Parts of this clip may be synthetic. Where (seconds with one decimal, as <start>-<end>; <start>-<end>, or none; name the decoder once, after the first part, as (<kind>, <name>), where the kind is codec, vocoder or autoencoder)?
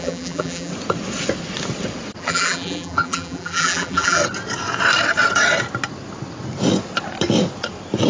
0.0-0.7 (vocoder, BigVGAN v2); 2.2-4.2